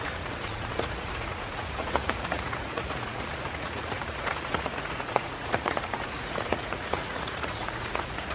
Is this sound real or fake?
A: fake